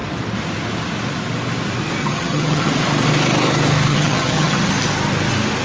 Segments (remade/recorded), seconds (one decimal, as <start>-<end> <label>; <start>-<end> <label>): 0.0-2.0 recorded; 2.0-2.7 remade; 2.7-3.9 recorded; 3.9-4.7 remade; 4.7-5.6 recorded